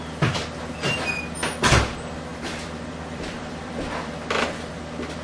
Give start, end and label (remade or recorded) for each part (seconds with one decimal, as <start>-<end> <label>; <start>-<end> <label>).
0.0-2.3 recorded; 2.3-4.8 remade; 4.8-5.2 recorded